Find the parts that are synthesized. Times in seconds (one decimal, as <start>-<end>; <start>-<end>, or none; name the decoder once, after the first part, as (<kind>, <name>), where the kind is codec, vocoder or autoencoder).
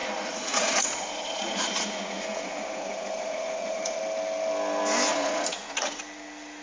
0.0-4.0 (vocoder, Vocos); 5.1-6.0